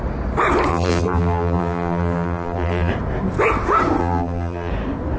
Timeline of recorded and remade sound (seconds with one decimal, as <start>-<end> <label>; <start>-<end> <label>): 0.0-0.7 recorded; 0.7-2.9 remade; 2.9-4.0 recorded; 4.0-4.7 remade; 4.7-5.2 recorded